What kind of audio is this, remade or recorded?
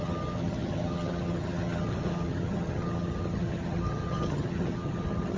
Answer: remade